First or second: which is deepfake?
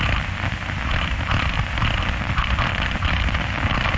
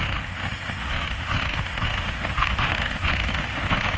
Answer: second